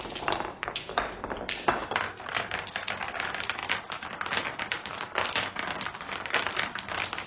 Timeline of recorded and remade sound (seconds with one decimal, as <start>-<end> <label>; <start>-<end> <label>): 0.0-7.3 recorded